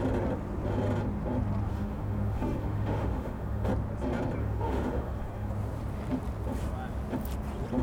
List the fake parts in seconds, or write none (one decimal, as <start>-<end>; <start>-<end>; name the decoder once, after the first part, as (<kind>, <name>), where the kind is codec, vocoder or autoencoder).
1.7-3.7 (autoencoder, DAC-VAE); 4.4-5.5